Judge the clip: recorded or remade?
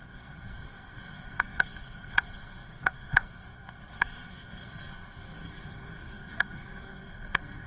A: remade